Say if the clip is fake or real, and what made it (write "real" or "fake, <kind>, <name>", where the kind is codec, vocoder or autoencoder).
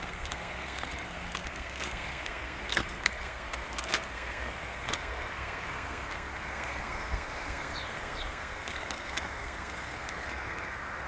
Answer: fake, codec, SNAC